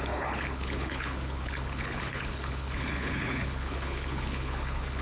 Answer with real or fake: fake